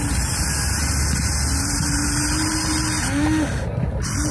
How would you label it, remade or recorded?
recorded